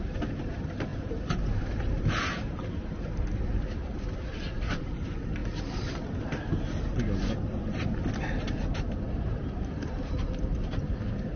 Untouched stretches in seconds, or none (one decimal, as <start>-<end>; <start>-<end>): 5.4-9.0